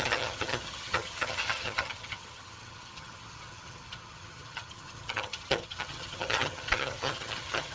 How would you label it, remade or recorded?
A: remade